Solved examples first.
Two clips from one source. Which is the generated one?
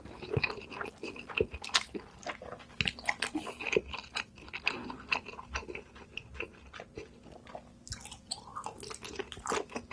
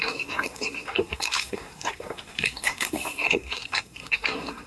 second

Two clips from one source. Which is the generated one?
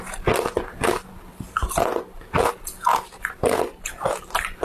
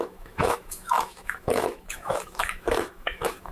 second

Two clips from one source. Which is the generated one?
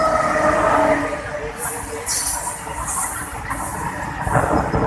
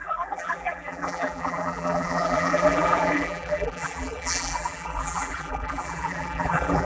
second